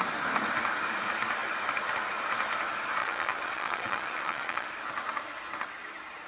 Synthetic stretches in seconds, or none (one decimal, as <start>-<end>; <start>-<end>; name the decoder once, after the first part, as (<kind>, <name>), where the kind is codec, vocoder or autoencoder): 3.0-4.7 (vocoder, Vocos)